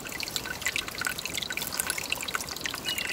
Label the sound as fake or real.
real